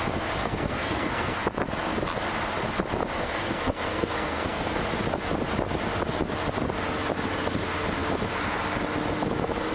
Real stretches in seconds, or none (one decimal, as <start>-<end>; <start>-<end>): 0.0-0.4; 1.4-3.2; 4.8-9.7